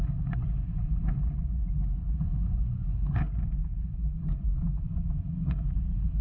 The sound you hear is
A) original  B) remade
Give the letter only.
B